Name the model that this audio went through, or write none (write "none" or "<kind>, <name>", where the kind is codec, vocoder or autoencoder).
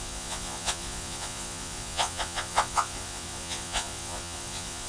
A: vocoder, Vocos